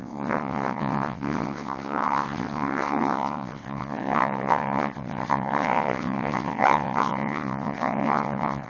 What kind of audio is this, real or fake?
fake